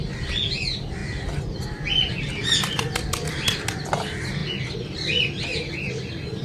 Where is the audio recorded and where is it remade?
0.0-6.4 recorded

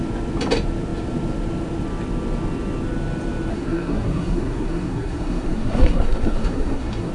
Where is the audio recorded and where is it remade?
0.0-3.5 recorded; 3.5-7.1 remade

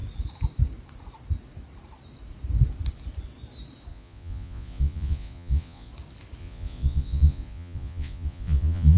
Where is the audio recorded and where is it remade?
0.0-3.9 recorded; 3.9-5.9 remade; 5.9-6.4 recorded; 6.4-9.0 remade

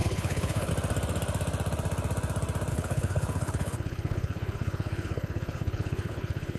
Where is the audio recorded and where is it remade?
0.0-0.7 remade; 0.7-2.7 recorded; 2.7-6.6 remade